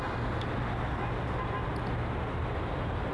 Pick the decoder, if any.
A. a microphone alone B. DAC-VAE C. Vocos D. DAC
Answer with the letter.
A